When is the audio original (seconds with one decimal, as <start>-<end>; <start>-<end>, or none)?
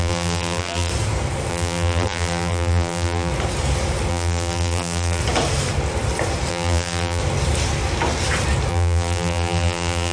0.9-1.5; 3.3-4.1; 5.2-6.5; 7.2-8.7